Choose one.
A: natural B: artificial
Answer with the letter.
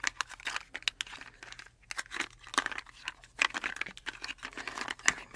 A